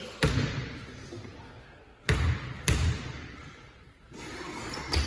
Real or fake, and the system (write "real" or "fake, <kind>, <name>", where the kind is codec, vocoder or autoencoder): real